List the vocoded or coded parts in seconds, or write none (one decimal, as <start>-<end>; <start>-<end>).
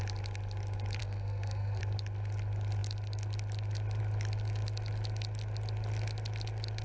1.0-1.8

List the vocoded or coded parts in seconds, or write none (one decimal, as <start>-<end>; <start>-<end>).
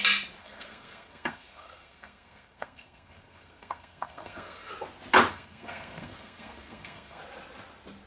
0.4-4.7; 5.3-7.2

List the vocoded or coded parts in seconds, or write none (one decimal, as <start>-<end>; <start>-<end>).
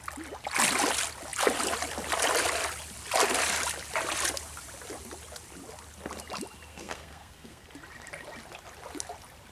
6.7-7.7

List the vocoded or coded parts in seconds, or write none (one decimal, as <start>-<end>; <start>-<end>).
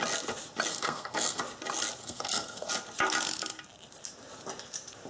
0.7-1.4; 2.0-2.7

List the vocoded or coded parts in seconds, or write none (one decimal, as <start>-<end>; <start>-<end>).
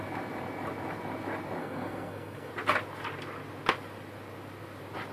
1.6-2.5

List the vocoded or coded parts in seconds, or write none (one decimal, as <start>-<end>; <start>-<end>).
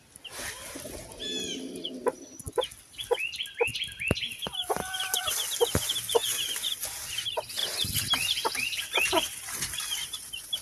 none